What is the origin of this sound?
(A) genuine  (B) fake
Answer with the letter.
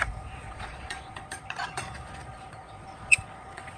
B